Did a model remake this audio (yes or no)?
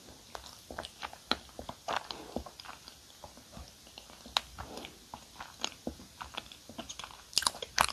no